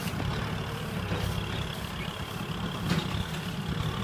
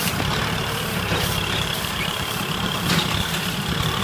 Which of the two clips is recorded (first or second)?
first